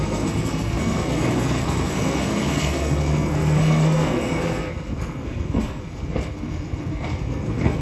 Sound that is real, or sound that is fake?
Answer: fake